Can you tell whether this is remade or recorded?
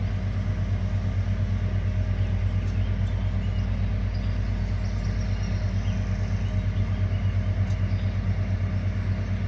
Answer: recorded